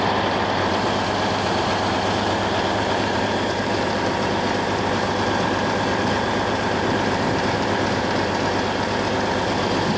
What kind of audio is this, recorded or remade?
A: remade